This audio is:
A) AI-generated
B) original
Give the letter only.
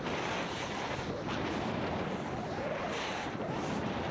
B